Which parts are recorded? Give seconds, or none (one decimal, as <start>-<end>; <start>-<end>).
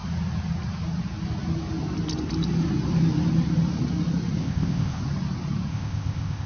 0.0-4.4; 5.0-5.7